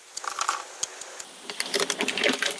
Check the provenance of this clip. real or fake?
real